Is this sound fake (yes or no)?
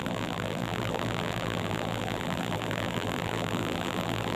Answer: yes